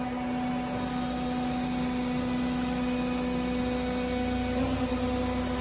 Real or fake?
real